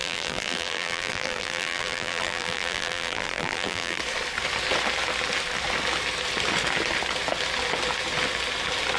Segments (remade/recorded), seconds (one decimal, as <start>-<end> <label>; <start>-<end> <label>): 0.0-4.0 remade; 4.0-9.0 recorded